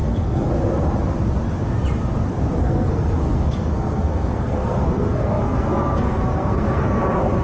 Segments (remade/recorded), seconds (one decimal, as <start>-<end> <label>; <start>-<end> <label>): 0.0-0.5 remade; 0.5-2.6 recorded; 2.6-7.0 remade; 7.0-7.4 recorded